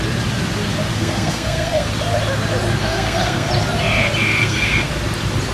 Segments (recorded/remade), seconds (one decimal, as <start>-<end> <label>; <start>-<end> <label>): 0.0-0.9 recorded; 0.9-1.9 remade; 1.9-2.8 recorded; 2.8-3.5 remade; 3.5-4.4 recorded; 4.4-4.9 remade; 4.9-5.5 recorded